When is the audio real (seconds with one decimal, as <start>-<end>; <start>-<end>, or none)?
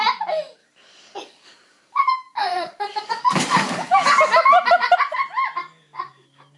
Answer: 0.0-0.6; 4.1-5.6